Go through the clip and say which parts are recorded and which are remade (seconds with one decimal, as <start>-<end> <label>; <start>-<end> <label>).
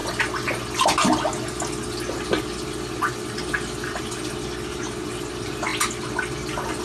0.0-6.8 recorded